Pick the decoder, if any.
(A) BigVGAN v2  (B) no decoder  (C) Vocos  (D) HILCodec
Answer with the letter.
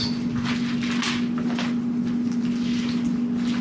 B